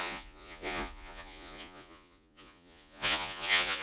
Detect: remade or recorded remade